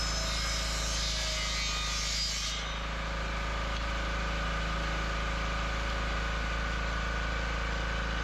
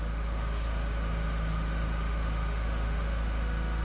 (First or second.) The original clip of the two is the first